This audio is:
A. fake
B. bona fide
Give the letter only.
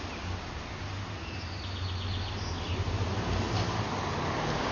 B